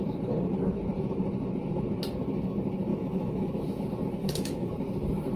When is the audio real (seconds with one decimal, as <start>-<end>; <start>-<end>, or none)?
0.0-2.9; 3.5-4.2; 4.7-5.4

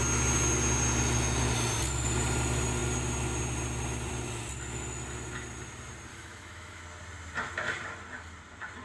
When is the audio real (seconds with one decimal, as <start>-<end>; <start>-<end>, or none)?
0.0-6.1; 6.8-8.8

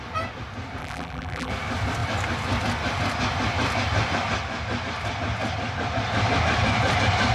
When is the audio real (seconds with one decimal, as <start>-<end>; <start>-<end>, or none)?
0.0-0.8; 1.5-7.3

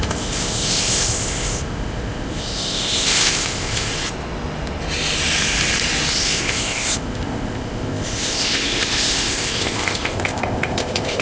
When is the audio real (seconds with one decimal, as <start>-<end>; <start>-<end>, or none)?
3.9-6.1

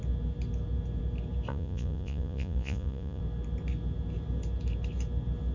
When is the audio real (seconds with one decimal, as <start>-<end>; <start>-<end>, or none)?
0.0-1.5; 3.2-5.5

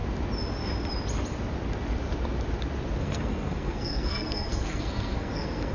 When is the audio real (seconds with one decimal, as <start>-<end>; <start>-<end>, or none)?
0.0-3.0